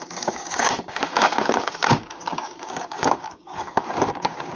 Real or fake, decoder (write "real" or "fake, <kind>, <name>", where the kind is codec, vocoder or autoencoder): fake, codec, DAC